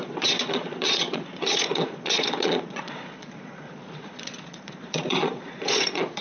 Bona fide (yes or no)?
no